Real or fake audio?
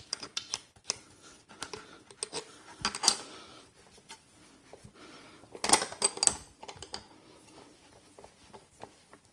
real